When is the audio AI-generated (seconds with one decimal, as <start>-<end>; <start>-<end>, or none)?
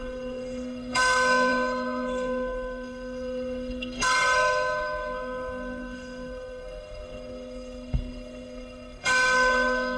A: 0.0-10.0